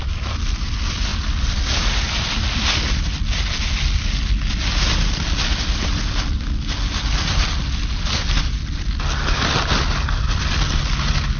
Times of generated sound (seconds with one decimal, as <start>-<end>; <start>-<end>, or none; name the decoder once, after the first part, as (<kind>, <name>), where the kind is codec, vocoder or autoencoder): none